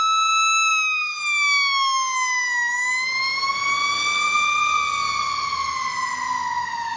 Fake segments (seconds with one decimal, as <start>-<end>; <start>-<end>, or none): none